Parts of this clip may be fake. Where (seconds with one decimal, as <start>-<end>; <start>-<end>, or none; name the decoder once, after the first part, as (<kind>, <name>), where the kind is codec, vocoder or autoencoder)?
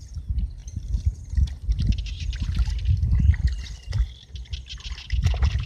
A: none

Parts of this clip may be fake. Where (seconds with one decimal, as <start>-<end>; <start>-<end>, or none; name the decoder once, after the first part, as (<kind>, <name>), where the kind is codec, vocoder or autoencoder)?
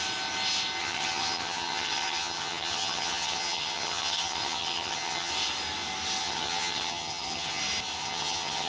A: 0.8-5.3 (vocoder, HiFi-GAN); 6.2-7.6; 8.0-8.7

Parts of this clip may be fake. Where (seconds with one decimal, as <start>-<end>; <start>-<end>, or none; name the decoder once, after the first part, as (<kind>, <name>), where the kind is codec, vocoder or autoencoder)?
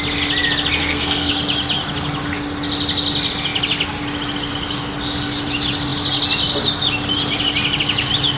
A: 0.8-1.3 (codec, SNAC)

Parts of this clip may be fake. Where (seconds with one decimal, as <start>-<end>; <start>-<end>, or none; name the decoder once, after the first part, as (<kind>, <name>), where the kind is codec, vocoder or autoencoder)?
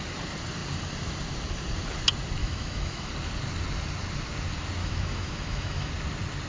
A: 2.4-3.1 (autoencoder, DAC-VAE); 4.8-5.9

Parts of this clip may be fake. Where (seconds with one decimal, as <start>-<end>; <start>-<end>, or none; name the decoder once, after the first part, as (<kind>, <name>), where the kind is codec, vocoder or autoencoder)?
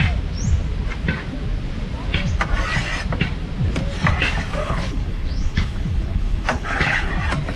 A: 4.6-7.1 (codec, HILCodec)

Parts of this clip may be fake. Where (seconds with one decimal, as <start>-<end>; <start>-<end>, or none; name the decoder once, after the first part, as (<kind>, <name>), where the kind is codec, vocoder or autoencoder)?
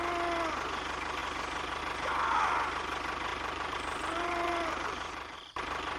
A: 3.3-6.0 (vocoder, BigVGAN v2)